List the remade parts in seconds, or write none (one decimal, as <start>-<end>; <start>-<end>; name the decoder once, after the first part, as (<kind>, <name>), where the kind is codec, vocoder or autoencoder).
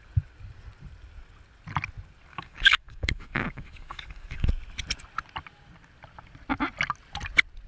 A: 2.3-4.5 (codec, DAC)